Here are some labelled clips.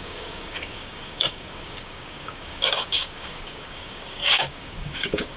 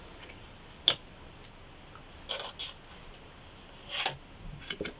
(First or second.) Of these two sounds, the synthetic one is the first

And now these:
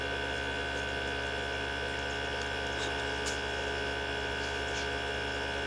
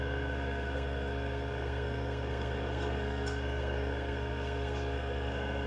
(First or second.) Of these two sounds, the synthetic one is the second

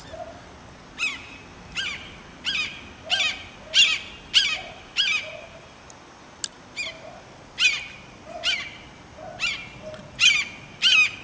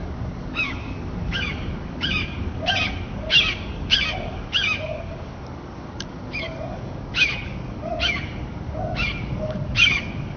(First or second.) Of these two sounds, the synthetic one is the second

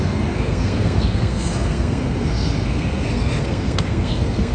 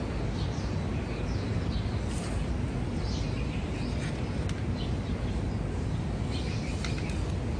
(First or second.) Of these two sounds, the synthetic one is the first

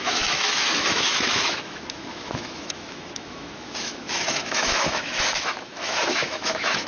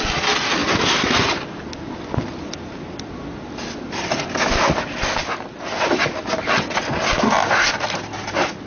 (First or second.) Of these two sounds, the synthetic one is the first